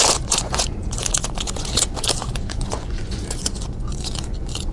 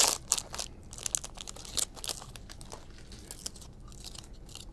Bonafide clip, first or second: second